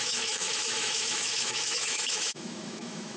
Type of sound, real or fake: fake